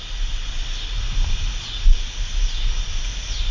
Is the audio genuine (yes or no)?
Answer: yes